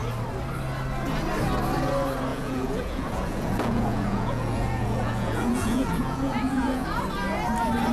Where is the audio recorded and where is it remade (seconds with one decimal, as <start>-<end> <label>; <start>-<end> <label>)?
0.0-2.3 recorded; 2.3-7.0 remade; 7.0-7.9 recorded